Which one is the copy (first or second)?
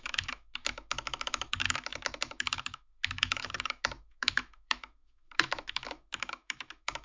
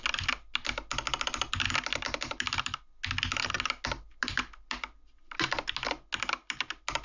first